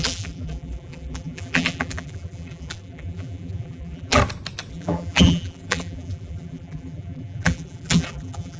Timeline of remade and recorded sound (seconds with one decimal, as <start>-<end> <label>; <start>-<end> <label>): 0.0-4.2 remade; 4.2-4.7 recorded; 4.7-8.6 remade